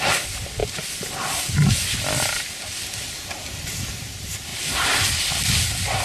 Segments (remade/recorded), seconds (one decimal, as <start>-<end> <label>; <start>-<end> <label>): 0.0-6.0 recorded

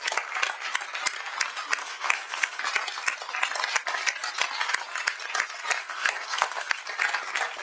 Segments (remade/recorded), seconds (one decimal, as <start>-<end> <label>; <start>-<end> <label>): 0.0-1.8 recorded; 1.8-2.6 remade; 2.6-5.8 recorded; 5.8-6.8 remade; 6.8-7.6 recorded

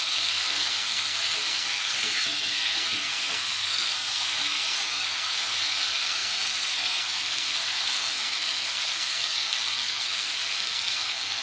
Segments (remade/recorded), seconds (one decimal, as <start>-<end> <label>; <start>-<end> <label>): 0.0-11.4 remade

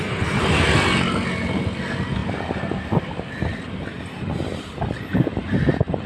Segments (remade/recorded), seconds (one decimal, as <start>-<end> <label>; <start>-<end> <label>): 0.0-6.1 recorded

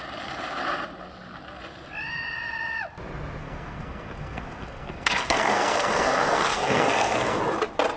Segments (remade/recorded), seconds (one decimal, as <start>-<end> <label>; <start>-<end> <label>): 0.0-3.4 recorded; 3.4-7.4 remade; 7.4-8.0 recorded

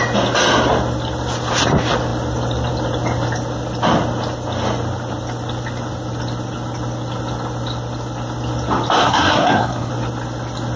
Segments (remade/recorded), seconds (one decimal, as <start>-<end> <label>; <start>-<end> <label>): 0.0-9.0 recorded; 9.0-9.9 remade; 9.9-10.8 recorded

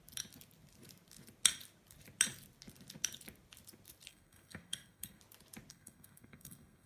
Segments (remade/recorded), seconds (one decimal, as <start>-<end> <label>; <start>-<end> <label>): 0.0-4.1 recorded; 4.1-5.2 remade; 5.2-5.7 recorded; 5.7-6.9 remade

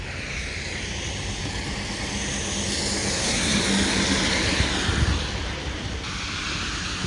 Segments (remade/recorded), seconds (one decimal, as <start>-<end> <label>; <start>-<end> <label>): 0.0-3.1 recorded; 3.1-3.6 remade; 3.6-7.1 recorded